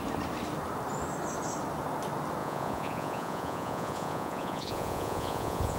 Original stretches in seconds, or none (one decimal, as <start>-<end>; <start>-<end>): 0.0-2.4